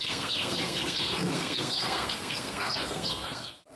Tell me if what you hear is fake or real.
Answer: fake